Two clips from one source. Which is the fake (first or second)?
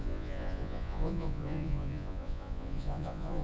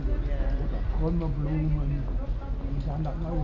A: first